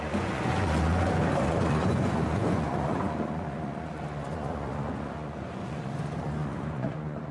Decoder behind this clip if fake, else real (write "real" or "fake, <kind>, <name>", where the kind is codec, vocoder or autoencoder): fake, vocoder, Vocos